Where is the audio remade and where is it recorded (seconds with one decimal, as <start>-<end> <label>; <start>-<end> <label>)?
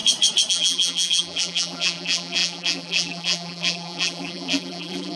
0.0-0.5 recorded; 0.5-5.2 remade